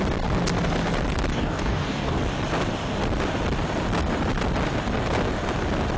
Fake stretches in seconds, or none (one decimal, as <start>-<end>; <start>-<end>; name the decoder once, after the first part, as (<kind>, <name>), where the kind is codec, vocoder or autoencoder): 1.3-2.2 (codec, DAC)